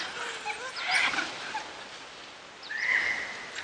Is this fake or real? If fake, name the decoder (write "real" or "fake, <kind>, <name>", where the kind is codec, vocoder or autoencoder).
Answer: real